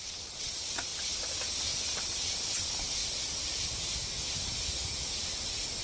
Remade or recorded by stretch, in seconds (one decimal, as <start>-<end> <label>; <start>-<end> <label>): 0.0-0.9 remade; 0.9-2.0 recorded; 2.0-3.0 remade; 3.0-5.8 recorded

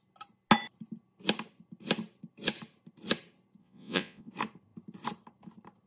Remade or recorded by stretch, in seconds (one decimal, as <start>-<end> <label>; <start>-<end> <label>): 0.0-3.6 recorded; 3.6-4.3 remade; 4.3-5.9 recorded

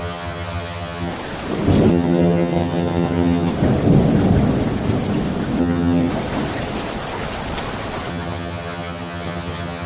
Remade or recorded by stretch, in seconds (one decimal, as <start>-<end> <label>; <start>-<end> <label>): 0.0-1.1 remade; 1.1-1.9 recorded; 1.9-3.5 remade; 3.5-5.6 recorded; 5.6-6.1 remade; 6.1-8.1 recorded; 8.1-9.9 remade

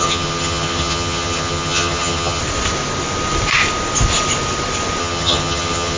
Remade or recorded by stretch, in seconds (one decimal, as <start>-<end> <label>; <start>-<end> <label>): 0.0-2.4 remade; 2.4-5.0 recorded; 5.0-6.0 remade

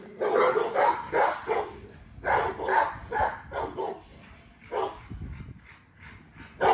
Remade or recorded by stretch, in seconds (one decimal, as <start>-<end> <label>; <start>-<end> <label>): 0.0-6.7 recorded

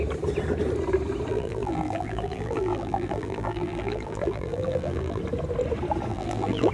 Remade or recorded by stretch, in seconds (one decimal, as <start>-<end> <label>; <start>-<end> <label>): 0.0-1.3 recorded; 1.3-5.2 remade; 5.2-6.1 recorded; 6.1-6.7 remade